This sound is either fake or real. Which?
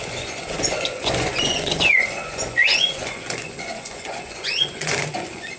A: fake